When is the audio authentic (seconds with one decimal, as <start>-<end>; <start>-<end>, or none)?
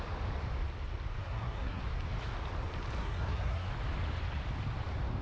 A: 0.0-1.2; 1.8-3.0; 3.7-5.2